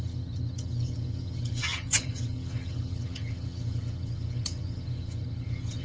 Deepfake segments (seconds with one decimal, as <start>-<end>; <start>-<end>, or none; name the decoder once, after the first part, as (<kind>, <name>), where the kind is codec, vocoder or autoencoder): 0.0-5.8 (vocoder, HiFi-GAN)